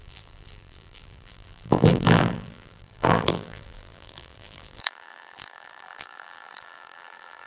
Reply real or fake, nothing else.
fake